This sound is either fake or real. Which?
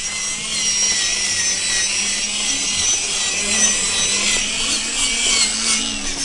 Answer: real